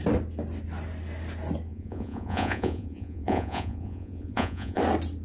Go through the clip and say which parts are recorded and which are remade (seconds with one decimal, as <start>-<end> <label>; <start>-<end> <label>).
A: 0.0-1.7 recorded; 1.7-4.8 remade; 4.8-5.2 recorded